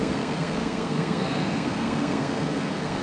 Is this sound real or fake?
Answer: fake